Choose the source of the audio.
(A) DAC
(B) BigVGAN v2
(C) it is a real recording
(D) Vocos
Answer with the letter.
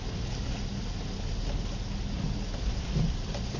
C